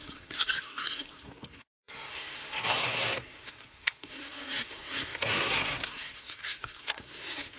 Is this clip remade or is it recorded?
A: remade